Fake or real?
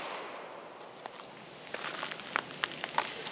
real